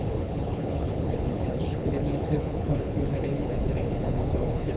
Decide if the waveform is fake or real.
fake